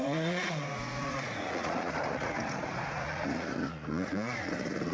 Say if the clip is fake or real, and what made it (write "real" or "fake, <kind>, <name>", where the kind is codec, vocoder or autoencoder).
fake, vocoder, Vocos